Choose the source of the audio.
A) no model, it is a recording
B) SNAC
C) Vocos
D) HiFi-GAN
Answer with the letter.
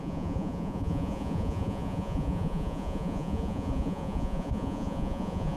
C